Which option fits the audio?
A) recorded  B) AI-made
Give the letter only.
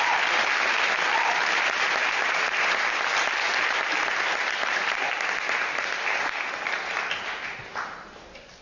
A